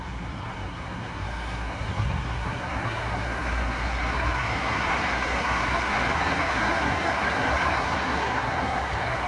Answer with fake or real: fake